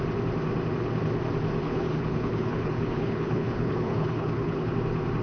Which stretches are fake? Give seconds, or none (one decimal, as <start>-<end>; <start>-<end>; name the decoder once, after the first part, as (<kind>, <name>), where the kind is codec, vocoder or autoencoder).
1.6-4.7 (codec, HILCodec)